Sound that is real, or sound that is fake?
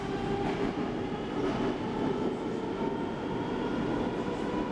real